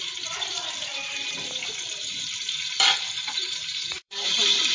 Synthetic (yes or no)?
yes